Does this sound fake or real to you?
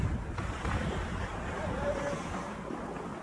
real